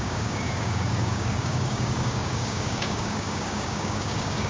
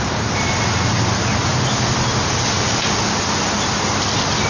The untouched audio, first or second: second